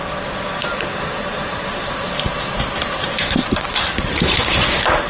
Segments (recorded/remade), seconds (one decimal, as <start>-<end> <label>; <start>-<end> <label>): 0.0-2.3 remade; 2.3-3.0 recorded; 3.0-5.1 remade